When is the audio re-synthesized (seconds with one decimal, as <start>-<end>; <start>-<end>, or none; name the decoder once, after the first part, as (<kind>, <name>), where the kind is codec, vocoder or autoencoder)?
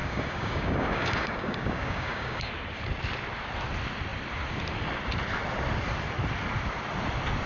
0.0-2.5 (codec, DAC)